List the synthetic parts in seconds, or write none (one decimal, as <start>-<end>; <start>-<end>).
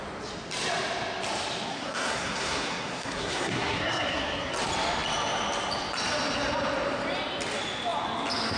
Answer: 1.7-4.5